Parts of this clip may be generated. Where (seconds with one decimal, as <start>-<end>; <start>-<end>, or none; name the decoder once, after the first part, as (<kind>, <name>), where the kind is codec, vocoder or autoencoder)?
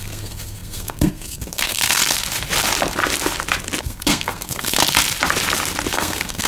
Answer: 0.0-2.0 (codec, SNAC); 3.8-4.8; 5.9-6.5